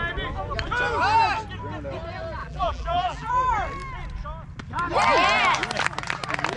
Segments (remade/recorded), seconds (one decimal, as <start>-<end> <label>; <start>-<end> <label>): 0.0-2.4 recorded; 2.4-3.3 remade; 3.3-6.6 recorded